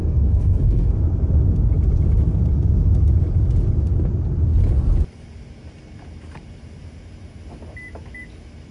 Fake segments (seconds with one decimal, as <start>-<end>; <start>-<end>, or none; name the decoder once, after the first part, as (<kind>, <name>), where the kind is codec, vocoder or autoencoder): 0.0-0.9 (codec, SNAC)